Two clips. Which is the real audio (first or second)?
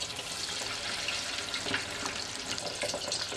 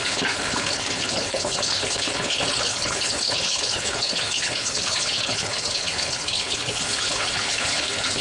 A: first